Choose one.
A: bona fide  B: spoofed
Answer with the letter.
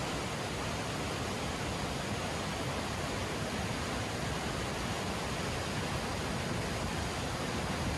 A